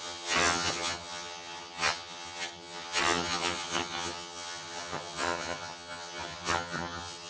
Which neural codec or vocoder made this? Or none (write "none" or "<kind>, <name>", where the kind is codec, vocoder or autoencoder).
vocoder, HiFi-GAN